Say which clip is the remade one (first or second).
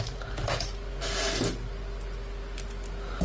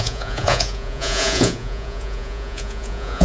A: second